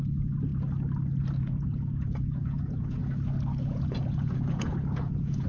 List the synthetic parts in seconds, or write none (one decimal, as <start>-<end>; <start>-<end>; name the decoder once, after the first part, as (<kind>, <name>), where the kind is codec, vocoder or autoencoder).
0.0-0.5 (vocoder, Vocos); 1.4-3.0; 3.6-5.5